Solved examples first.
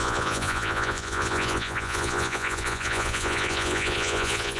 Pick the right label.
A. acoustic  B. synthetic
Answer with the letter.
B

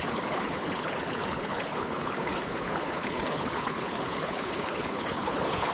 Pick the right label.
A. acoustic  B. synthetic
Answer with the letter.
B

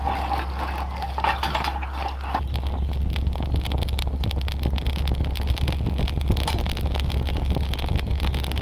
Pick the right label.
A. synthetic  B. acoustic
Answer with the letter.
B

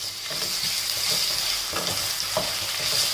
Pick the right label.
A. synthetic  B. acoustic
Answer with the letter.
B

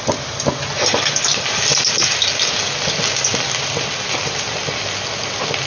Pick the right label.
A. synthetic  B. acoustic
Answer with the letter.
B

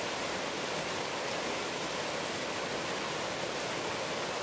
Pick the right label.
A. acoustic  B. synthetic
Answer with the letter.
A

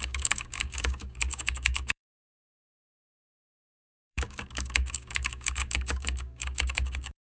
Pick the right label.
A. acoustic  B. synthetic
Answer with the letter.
B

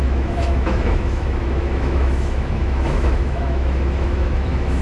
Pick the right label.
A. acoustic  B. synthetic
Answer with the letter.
B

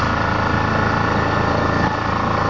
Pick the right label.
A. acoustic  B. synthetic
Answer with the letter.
A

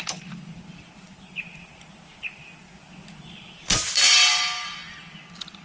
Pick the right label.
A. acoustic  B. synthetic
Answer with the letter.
A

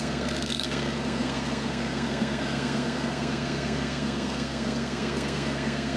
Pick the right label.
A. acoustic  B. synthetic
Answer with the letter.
B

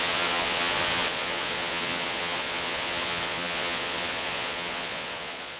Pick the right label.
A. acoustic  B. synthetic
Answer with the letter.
B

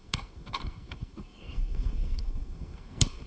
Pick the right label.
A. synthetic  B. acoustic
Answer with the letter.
A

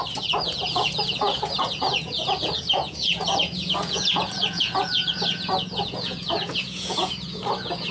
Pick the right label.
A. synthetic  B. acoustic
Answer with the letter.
A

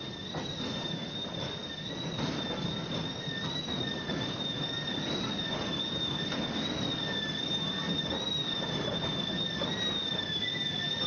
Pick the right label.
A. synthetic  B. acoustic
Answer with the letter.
B